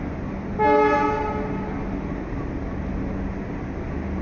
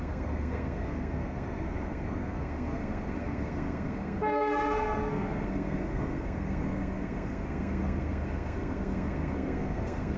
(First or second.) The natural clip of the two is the first